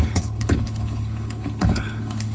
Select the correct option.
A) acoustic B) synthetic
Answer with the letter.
B